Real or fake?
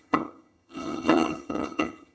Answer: fake